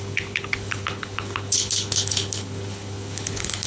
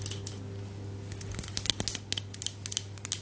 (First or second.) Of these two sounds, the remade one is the first